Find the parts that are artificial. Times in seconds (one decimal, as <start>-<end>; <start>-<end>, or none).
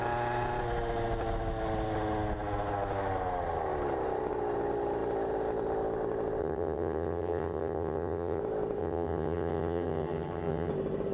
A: 6.4-8.4; 8.8-10.7